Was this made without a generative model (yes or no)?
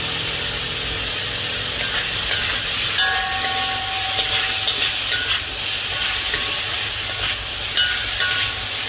yes